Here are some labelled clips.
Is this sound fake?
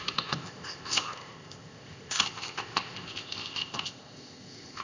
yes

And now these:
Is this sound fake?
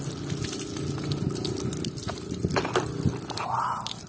no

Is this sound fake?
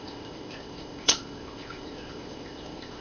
yes